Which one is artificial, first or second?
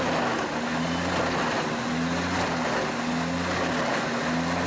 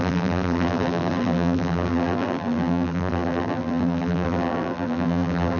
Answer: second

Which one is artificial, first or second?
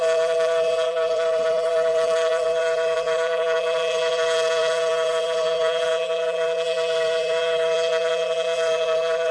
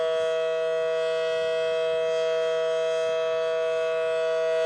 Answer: first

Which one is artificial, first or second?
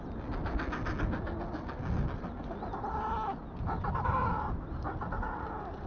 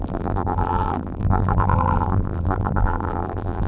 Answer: second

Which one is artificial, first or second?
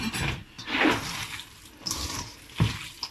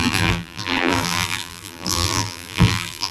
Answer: second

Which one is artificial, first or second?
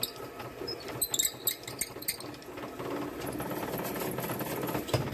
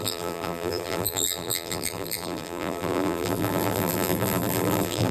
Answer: second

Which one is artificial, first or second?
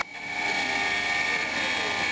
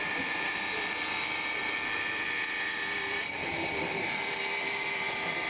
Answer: second